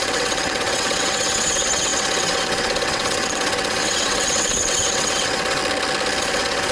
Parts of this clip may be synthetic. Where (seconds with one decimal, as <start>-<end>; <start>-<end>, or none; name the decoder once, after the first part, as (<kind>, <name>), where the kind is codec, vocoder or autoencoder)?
0.0-5.6 (vocoder, WaveNeXt); 6.2-6.7